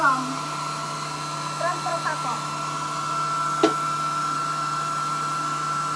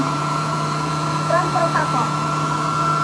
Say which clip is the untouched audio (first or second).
first